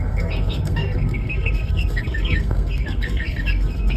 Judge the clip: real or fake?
fake